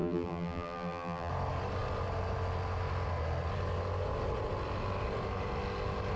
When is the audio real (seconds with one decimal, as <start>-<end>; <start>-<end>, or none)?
1.3-6.2